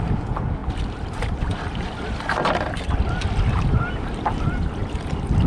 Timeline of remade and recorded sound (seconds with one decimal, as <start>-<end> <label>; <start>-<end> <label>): 0.0-5.5 remade

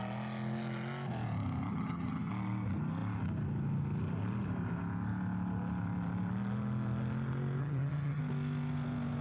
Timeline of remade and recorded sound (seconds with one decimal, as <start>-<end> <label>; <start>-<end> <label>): 0.0-1.7 recorded; 1.7-2.3 remade; 2.3-7.6 recorded; 7.6-8.2 remade; 8.2-9.2 recorded